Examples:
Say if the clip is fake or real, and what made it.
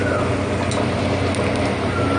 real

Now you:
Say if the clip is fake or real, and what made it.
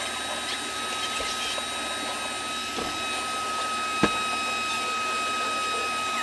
real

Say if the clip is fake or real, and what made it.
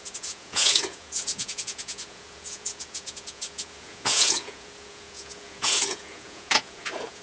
fake, vocoder, Vocos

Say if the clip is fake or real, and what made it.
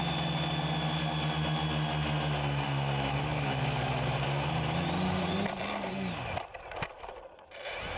real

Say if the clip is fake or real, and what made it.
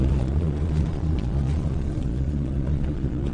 fake, vocoder, Vocos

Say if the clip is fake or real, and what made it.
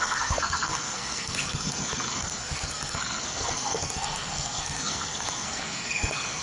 fake, codec, SNAC